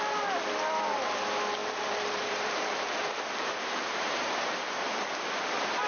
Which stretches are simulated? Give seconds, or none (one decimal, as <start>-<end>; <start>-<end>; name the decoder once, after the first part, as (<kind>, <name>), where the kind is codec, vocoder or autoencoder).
1.6-5.1 (vocoder, BigVGAN v2)